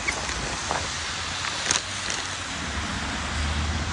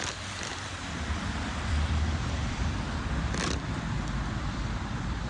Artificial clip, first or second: second